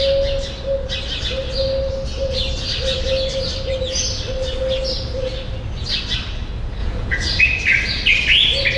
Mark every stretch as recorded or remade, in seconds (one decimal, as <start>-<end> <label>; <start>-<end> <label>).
0.0-6.8 recorded; 6.8-7.4 remade; 7.4-8.8 recorded